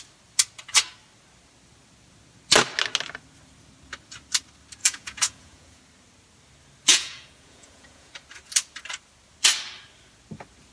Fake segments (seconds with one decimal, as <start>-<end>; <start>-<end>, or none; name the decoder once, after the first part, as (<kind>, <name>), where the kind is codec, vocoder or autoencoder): 4.8-5.8 (vocoder, Vocos); 6.9-8.1